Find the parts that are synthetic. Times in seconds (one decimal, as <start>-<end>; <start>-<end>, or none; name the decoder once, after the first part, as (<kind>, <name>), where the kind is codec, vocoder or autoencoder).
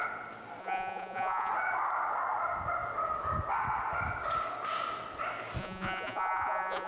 0.6-1.5 (vocoder, Vocos); 5.6-6.9